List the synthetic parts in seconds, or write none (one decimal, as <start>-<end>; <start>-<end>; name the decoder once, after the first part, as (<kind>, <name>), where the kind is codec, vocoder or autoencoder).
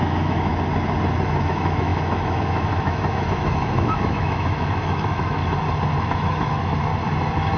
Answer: 0.0-0.5 (autoencoder, DAC-VAE); 1.4-5.4; 6.0-6.9